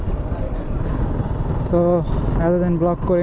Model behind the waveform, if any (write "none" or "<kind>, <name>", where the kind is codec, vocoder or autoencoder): none